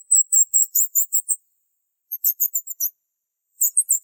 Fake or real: fake